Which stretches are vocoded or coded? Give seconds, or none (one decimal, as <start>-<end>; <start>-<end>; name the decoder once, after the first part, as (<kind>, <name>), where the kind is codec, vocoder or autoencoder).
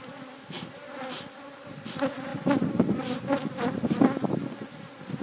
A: none